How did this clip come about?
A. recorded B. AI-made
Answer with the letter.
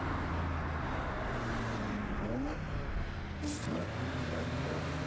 A